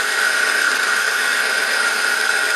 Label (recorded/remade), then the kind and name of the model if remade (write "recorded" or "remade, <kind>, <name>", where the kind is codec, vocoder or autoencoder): remade, codec, SNAC